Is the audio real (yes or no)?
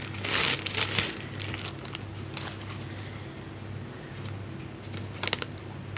yes